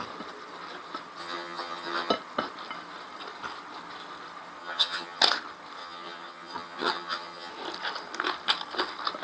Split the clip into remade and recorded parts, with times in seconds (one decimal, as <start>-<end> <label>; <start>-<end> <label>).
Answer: 0.0-1.2 recorded; 1.2-2.1 remade; 2.1-4.6 recorded; 4.6-5.2 remade; 5.2-5.8 recorded; 5.8-7.5 remade; 7.5-9.2 recorded

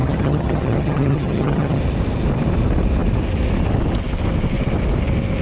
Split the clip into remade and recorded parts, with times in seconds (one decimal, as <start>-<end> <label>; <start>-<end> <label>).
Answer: 0.0-1.8 remade; 1.8-5.4 recorded

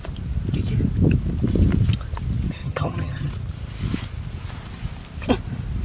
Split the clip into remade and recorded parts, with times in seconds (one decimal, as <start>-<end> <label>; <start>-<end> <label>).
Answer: 0.0-2.6 recorded; 2.6-3.3 remade; 3.3-5.8 recorded

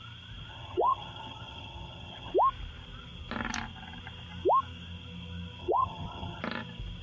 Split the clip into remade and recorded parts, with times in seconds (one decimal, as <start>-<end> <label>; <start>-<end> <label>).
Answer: 0.0-0.5 recorded; 0.5-2.3 remade; 2.3-5.6 recorded; 5.6-6.4 remade; 6.4-7.0 recorded

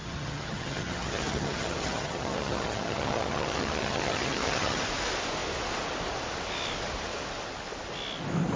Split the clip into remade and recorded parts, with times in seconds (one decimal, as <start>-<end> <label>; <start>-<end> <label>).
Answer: 0.0-4.8 remade; 4.8-8.6 recorded

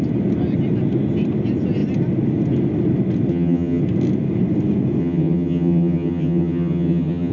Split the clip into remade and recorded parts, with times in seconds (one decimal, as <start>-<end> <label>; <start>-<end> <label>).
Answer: 0.0-3.3 recorded; 3.3-3.8 remade; 3.8-5.0 recorded; 5.0-7.3 remade